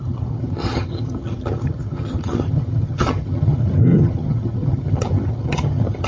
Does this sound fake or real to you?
fake